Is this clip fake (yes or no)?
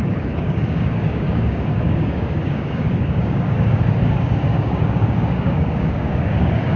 yes